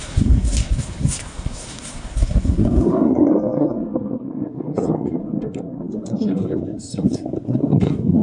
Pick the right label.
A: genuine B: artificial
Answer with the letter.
B